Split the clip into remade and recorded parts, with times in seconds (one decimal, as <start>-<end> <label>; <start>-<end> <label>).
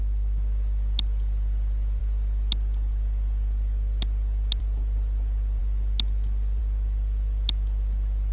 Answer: 0.0-8.3 recorded